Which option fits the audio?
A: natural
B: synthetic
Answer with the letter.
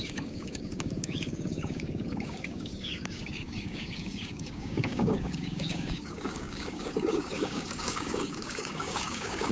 B